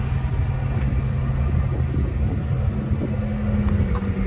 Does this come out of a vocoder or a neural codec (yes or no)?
no